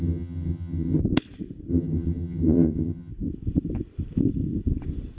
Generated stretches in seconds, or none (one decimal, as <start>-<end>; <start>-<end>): 0.0-1.0; 1.7-3.1